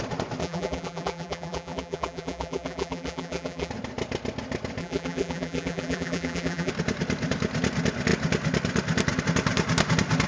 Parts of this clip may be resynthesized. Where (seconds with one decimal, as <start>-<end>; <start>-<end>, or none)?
0.4-3.7; 4.8-6.7